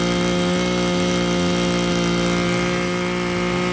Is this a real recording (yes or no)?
yes